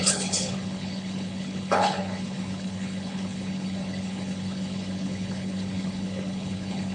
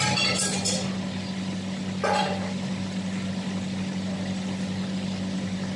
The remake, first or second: first